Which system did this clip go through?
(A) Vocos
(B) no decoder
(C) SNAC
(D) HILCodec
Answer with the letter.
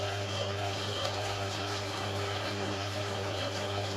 C